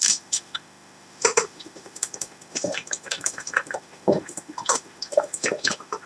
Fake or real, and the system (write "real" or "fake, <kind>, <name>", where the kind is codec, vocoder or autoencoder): fake, autoencoder, DAC-VAE